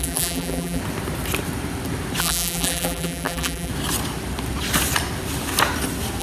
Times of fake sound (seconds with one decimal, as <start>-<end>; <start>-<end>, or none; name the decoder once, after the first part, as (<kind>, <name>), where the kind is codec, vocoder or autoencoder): 0.0-0.8 (vocoder, BigVGAN v2); 2.2-3.7